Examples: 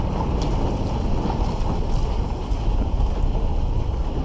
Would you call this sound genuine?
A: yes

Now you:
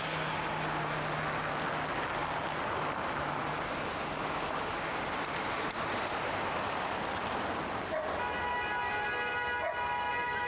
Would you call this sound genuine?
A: yes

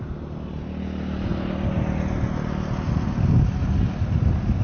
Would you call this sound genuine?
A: yes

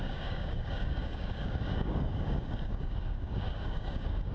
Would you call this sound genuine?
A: no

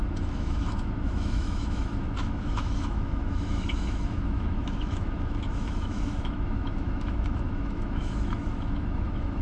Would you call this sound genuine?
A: no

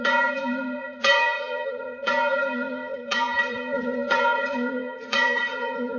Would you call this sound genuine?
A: no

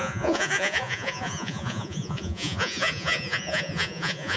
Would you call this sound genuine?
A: no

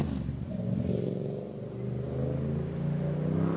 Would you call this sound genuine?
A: yes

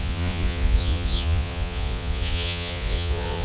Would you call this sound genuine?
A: no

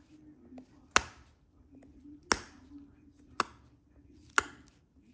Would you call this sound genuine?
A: yes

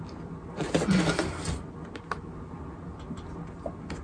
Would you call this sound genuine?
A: yes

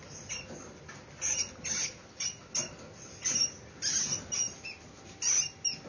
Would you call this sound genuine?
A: yes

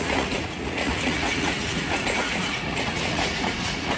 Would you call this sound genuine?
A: no